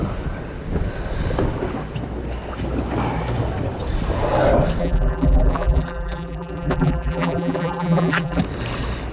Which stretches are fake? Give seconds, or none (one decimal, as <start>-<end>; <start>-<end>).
4.8-8.4